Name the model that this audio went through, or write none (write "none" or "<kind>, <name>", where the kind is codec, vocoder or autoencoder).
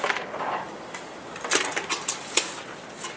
none